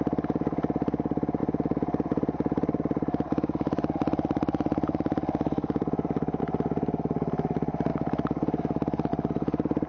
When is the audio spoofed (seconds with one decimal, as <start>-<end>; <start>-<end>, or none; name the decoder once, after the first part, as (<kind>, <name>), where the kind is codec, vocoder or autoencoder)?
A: 1.4-6.4 (vocoder, BigVGAN v2)